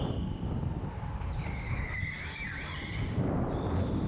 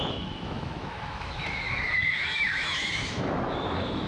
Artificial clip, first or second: second